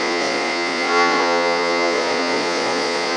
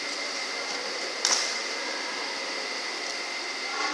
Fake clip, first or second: first